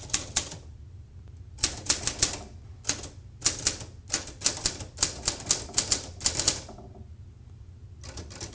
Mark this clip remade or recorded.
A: recorded